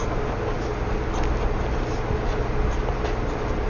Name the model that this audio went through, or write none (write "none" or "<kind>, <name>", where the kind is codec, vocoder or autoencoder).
none